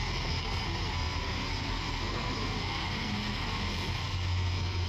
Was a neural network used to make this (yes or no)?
yes